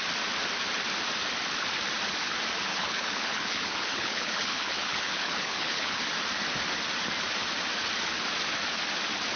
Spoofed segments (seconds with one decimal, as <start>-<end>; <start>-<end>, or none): 2.7-6.0